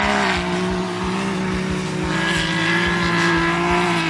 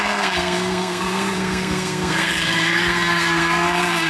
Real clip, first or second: first